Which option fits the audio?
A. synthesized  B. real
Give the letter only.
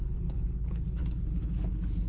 A